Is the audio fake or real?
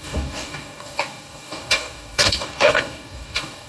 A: fake